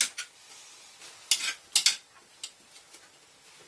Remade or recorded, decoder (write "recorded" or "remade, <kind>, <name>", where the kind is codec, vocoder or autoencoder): recorded